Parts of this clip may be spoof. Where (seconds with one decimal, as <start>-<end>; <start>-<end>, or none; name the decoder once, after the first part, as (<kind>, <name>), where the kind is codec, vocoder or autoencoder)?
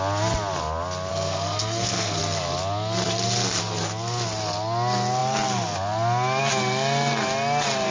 1.1-2.2 (codec, SNAC)